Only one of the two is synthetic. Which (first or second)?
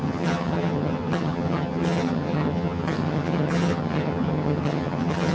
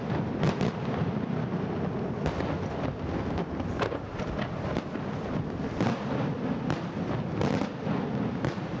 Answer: first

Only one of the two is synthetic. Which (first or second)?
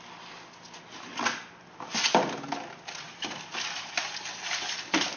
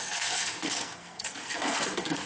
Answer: second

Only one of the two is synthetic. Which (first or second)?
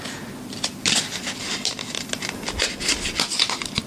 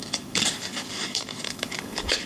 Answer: second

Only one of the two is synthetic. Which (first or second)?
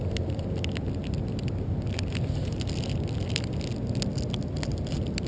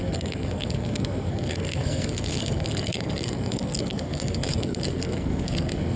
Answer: second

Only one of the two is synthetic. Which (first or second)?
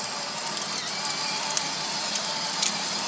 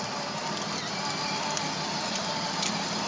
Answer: second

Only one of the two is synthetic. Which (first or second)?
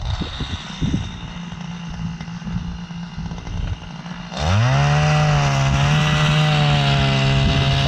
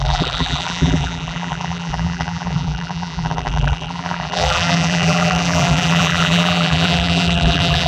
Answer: second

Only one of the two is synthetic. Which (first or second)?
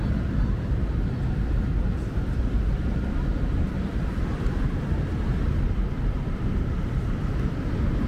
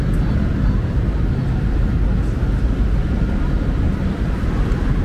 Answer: first